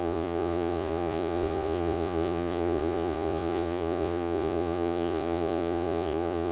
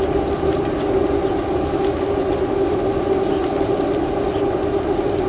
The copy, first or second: first